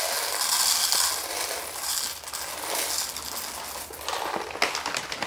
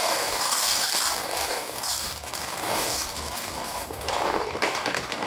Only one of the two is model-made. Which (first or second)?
second